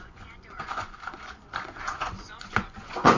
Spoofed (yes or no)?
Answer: yes